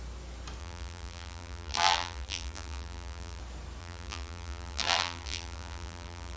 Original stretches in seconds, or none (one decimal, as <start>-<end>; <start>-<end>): 0.0-0.6; 3.4-3.8